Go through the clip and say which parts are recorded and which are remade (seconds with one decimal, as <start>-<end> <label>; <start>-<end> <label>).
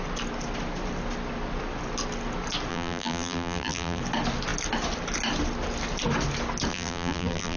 0.0-2.7 recorded; 2.7-4.0 remade; 4.0-6.7 recorded; 6.7-7.6 remade